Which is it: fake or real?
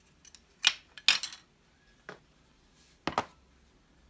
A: real